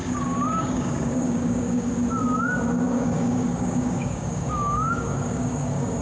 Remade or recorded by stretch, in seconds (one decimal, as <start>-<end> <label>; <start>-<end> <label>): 0.0-1.9 remade; 1.9-2.9 recorded; 2.9-6.0 remade